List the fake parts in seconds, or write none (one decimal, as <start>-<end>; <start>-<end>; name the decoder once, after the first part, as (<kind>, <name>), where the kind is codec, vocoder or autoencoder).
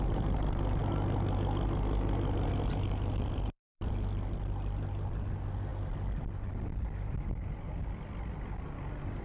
none